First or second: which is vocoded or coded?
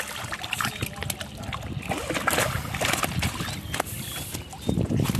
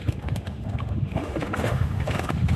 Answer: second